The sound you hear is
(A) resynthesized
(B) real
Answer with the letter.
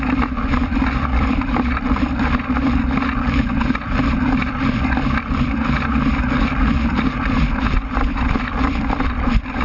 A